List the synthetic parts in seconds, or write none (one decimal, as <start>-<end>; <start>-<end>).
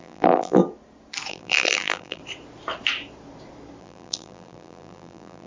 0.0-0.6; 1.3-2.2; 3.8-5.5